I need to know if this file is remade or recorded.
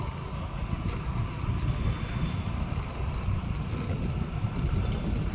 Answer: recorded